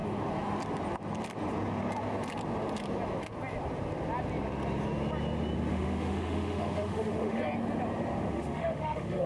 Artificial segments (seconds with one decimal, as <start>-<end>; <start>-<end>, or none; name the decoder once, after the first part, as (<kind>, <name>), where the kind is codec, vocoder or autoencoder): 5.7-7.4 (autoencoder, DAC-VAE); 8.3-9.3

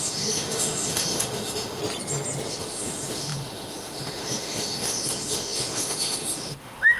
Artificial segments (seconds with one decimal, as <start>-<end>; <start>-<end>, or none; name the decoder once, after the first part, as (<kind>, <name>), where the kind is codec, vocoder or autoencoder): 0.0-1.8 (autoencoder, DAC-VAE); 2.5-7.0

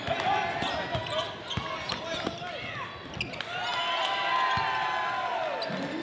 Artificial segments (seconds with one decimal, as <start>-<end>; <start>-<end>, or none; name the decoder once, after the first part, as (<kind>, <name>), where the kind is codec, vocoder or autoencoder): none

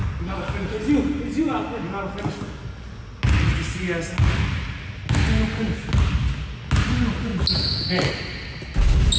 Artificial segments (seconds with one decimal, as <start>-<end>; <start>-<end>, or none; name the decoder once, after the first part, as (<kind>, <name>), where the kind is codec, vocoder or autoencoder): none

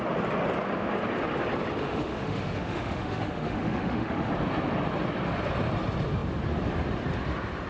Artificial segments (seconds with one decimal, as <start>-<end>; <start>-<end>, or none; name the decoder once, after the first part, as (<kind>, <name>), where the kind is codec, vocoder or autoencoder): 1.8-4.3 (autoencoder, DAC-VAE)